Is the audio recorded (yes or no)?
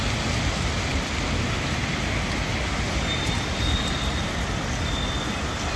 yes